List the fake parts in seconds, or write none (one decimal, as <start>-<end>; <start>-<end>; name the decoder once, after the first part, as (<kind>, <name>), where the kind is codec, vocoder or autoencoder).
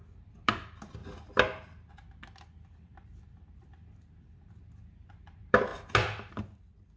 0.0-5.7 (vocoder, BigVGAN v2); 6.3-7.0